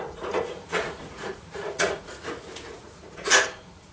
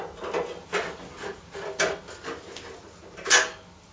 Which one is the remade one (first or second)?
first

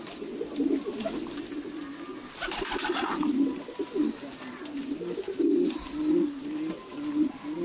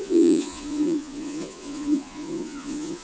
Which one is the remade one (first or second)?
second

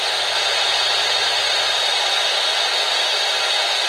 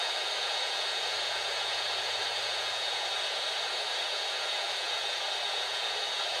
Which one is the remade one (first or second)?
second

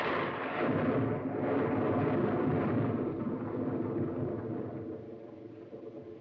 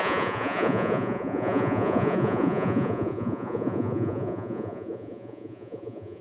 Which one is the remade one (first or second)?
second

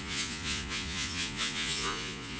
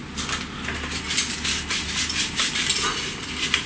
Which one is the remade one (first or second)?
first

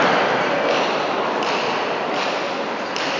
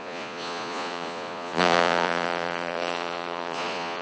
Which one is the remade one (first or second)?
second